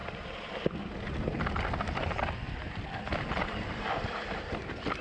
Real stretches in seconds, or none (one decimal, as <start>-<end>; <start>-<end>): 0.0-5.0